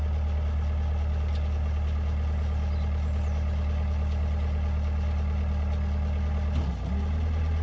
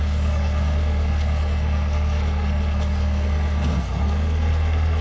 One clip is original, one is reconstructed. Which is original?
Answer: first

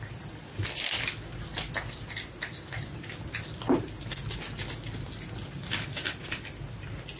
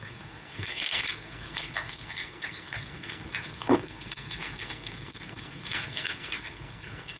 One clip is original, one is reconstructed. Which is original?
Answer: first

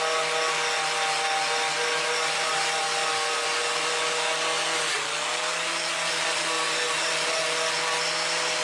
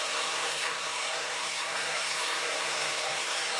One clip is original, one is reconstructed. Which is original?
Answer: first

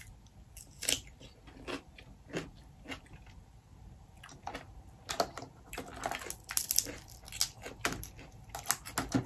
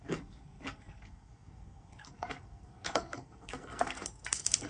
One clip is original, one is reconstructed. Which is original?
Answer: first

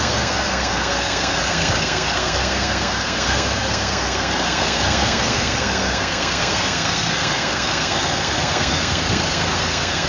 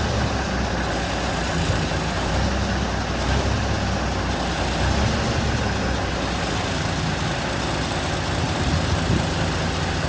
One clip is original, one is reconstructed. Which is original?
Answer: second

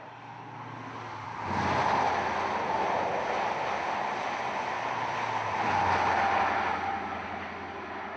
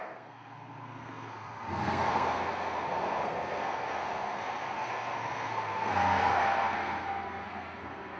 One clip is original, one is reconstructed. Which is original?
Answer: first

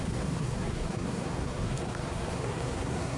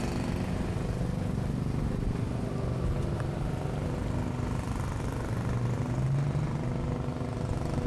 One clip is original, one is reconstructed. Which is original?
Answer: second